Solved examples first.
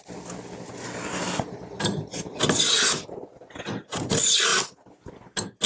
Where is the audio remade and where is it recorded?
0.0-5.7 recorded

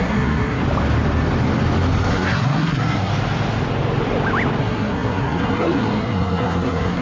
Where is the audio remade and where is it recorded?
0.0-0.6 remade; 0.6-2.1 recorded; 2.1-3.1 remade; 3.1-4.6 recorded; 4.6-7.0 remade